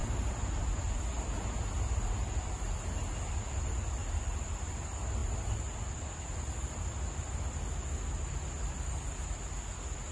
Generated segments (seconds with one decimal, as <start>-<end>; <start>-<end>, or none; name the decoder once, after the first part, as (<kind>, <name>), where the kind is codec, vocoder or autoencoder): none